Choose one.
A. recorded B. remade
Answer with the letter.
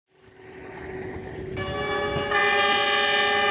A